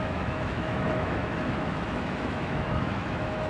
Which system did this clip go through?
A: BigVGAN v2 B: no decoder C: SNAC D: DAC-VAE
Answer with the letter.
D